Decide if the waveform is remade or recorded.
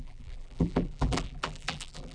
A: remade